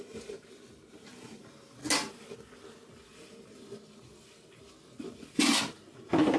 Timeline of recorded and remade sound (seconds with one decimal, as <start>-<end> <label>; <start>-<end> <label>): 0.0-1.8 remade; 1.8-5.6 recorded; 5.6-6.4 remade